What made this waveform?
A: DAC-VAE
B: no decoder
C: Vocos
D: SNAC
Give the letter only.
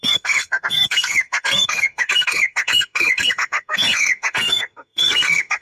D